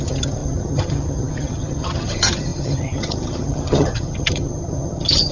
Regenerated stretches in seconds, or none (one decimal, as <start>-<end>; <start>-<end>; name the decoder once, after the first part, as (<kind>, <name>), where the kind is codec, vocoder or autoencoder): 0.0-5.3 (vocoder, HiFi-GAN)